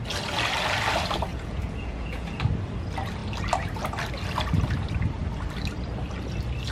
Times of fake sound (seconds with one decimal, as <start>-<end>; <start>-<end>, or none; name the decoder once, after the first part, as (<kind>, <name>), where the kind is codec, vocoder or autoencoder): 1.3-2.4 (vocoder, Vocos)